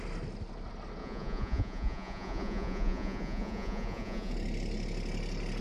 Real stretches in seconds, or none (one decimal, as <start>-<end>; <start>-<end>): 0.0-1.0; 4.3-5.6